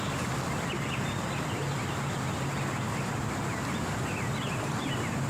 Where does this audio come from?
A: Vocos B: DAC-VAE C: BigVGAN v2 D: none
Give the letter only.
D